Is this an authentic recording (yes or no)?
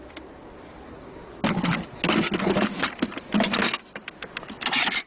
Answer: yes